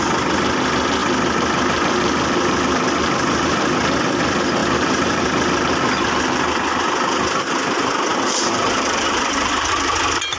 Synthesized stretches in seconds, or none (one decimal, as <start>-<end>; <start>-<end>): 4.6-6.8; 8.1-9.7